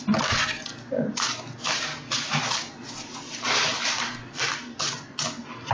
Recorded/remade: recorded